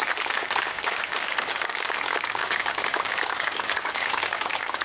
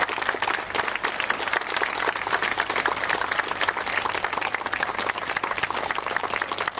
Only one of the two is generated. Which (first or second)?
first